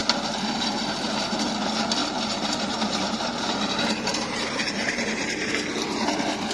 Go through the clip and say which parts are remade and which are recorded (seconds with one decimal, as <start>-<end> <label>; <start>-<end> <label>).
0.0-2.0 recorded; 2.0-5.5 remade; 5.5-6.5 recorded